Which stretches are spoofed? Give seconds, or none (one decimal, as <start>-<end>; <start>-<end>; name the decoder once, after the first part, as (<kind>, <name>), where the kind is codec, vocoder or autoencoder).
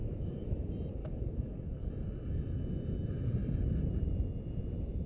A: 0.0-0.6 (codec, DAC); 1.0-1.9